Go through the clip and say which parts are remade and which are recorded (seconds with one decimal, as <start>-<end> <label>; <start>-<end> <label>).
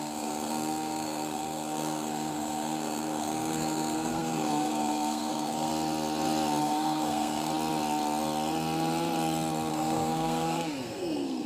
0.0-5.7 remade; 5.7-6.6 recorded; 6.6-7.5 remade; 7.5-9.7 recorded; 9.7-11.5 remade